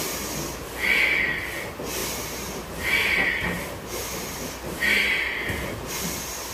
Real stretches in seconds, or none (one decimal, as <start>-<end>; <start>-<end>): 0.0-6.5